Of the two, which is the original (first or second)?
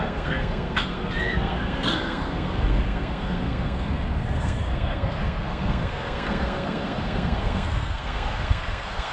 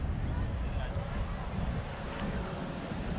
second